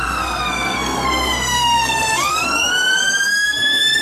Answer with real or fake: fake